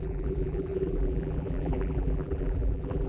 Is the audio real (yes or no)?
no